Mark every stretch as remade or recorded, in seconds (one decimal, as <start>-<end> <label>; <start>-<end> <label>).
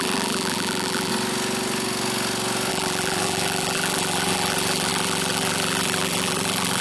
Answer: 0.0-1.1 remade; 1.1-2.7 recorded; 2.7-6.8 remade